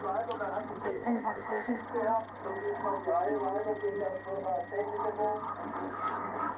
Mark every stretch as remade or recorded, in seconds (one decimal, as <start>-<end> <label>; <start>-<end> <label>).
0.0-0.8 recorded; 0.8-1.8 remade; 1.8-6.6 recorded